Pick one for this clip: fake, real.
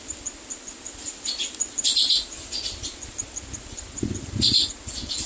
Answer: real